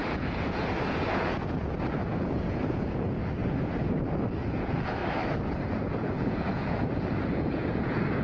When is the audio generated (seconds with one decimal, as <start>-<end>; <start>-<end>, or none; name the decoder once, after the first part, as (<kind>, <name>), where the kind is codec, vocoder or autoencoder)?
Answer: 0.0-3.2 (vocoder, Vocos); 4.4-5.0; 5.7-8.2